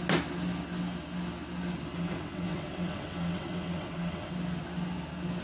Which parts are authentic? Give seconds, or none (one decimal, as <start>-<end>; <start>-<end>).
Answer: 0.0-1.9; 4.3-5.4